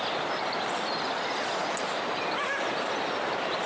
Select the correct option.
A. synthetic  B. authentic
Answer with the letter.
B